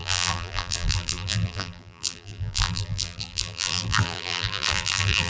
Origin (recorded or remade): remade